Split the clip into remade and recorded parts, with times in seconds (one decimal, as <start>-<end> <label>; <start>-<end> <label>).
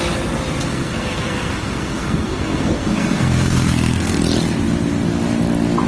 0.0-0.7 recorded; 0.7-4.2 remade; 4.2-5.9 recorded